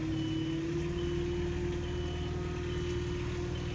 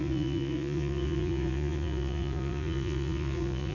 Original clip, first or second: first